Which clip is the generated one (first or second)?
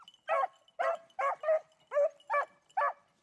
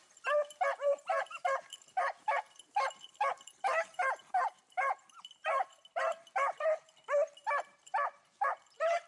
second